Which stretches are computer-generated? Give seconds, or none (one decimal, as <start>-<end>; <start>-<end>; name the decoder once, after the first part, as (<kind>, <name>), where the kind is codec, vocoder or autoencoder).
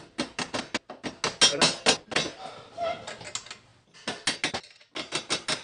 none